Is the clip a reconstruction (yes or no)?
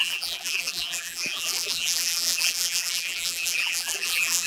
yes